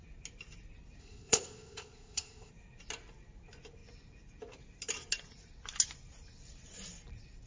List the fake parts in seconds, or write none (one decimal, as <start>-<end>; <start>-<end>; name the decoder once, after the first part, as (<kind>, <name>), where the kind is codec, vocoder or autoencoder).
1.0-2.5 (codec, ZipCodec)